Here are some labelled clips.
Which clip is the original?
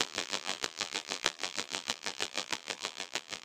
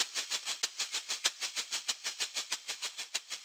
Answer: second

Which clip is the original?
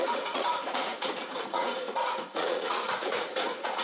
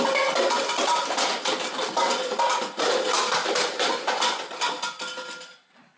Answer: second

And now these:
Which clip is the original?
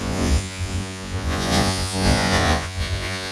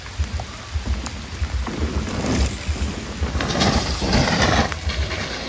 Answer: second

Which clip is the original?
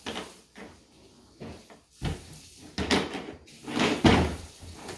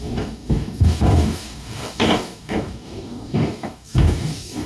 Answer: first